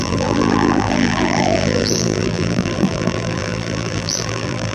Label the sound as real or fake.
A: fake